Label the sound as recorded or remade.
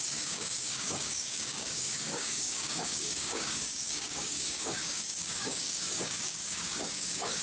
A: remade